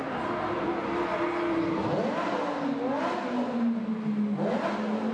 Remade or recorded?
recorded